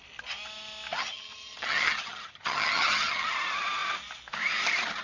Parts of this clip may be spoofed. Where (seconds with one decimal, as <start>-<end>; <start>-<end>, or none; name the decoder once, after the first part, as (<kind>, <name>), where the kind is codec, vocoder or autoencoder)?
1.0-3.3 (vocoder, HiFi-GAN)